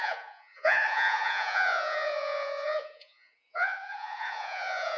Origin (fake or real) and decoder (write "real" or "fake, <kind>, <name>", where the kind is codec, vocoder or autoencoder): fake, vocoder, Vocos